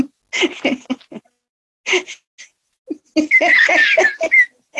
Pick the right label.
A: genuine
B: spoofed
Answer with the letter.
A